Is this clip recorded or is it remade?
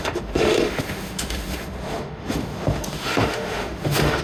remade